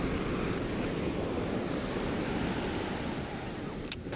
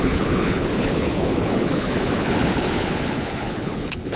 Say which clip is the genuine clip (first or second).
first